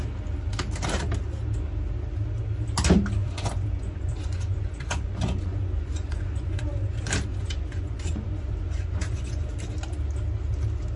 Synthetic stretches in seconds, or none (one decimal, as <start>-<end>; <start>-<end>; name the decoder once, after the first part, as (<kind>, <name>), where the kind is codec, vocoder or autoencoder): 3.2-6.6 (vocoder, Vocos); 7.3-9.5